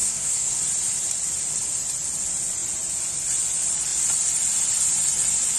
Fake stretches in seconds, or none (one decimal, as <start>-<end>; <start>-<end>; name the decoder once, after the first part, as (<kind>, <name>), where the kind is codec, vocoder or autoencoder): 0.0-0.6 (codec, SNAC)